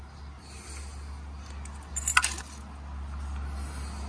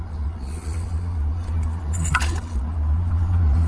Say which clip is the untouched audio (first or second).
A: first